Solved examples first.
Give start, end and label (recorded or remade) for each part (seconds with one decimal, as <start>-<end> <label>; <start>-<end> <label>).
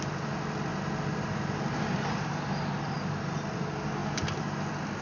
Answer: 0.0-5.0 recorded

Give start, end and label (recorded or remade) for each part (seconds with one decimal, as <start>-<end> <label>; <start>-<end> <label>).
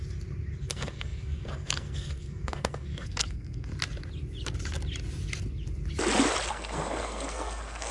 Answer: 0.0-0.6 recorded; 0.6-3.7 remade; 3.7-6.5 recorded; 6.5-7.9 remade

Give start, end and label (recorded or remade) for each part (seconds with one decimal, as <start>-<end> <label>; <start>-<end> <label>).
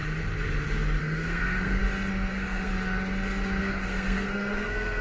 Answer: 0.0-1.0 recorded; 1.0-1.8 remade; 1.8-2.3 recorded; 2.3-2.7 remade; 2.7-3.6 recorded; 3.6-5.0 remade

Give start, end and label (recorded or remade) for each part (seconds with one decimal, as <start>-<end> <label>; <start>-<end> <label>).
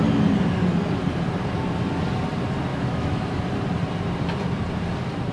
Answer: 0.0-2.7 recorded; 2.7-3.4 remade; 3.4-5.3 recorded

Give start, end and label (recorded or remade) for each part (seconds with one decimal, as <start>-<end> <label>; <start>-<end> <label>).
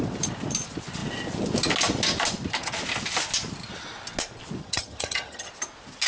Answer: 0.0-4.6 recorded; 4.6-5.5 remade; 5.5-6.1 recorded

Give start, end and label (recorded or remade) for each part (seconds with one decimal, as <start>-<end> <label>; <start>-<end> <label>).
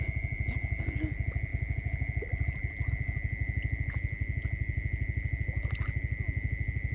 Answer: 0.0-6.9 recorded